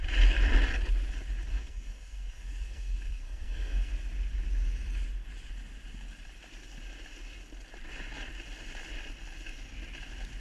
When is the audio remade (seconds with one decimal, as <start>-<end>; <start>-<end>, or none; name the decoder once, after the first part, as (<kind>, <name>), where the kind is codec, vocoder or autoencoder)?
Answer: 1.5-3.9 (codec, SNAC)